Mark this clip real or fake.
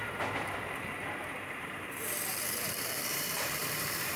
fake